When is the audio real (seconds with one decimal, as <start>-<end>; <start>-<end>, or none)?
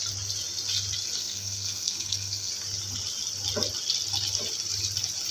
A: 0.0-1.2; 2.5-5.3